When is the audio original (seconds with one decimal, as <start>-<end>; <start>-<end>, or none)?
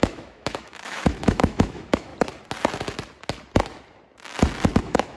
2.1-4.8